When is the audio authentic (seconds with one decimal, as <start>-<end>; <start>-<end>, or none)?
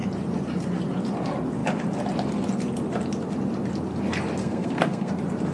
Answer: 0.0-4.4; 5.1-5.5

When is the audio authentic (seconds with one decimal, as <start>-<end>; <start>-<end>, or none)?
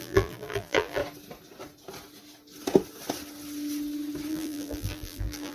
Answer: 1.0-4.3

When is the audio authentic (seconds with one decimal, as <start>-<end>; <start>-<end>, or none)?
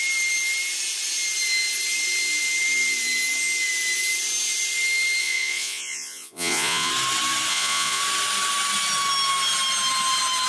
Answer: 0.0-5.2; 6.9-7.5; 8.0-10.5